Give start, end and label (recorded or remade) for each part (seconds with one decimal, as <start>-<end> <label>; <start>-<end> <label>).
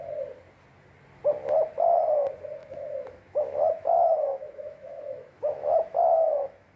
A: 0.0-2.6 recorded; 2.6-6.8 remade